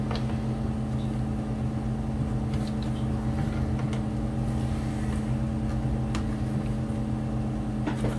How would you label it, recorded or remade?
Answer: recorded